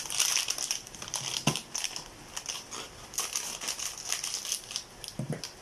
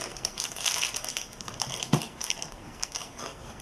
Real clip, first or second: first